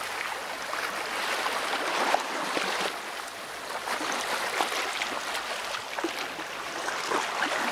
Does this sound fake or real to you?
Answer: real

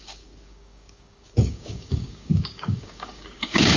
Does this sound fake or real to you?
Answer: fake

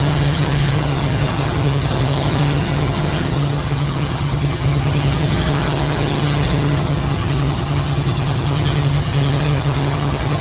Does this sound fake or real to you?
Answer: fake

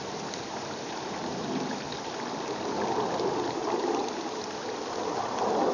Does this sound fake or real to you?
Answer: real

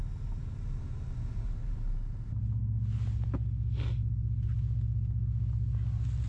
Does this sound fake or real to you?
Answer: real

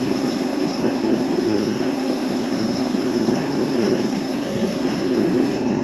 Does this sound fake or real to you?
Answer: fake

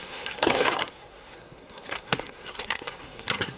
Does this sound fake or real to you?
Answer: fake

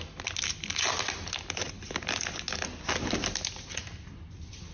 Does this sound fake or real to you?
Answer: real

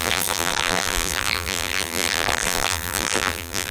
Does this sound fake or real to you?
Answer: fake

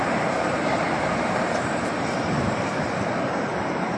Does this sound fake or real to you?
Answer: fake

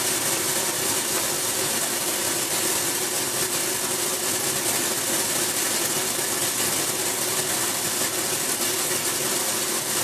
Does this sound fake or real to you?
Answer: real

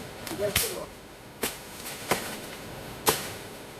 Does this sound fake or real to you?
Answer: fake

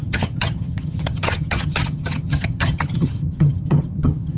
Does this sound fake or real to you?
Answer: fake